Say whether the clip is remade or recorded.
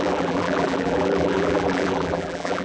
remade